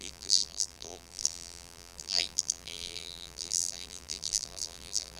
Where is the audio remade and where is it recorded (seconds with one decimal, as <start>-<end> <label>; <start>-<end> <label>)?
0.0-5.2 remade